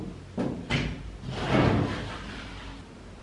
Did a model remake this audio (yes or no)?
no